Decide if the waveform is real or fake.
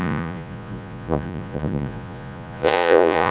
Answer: fake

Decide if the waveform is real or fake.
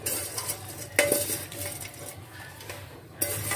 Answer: real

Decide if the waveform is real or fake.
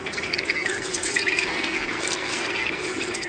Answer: fake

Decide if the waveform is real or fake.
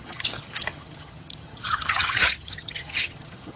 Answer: fake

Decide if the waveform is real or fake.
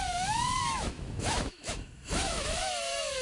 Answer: fake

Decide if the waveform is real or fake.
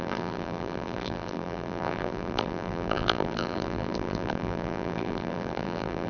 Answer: fake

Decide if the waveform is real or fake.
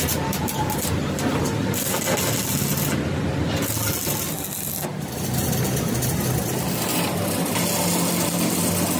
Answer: real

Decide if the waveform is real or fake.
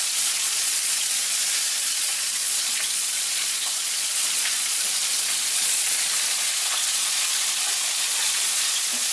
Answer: fake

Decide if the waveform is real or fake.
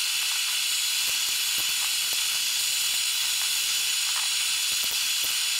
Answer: real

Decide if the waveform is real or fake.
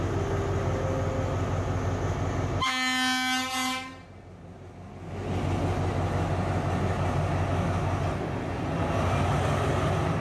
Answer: real